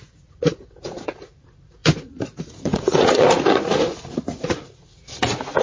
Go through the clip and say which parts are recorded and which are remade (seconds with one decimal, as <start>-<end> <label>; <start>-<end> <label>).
0.0-5.6 remade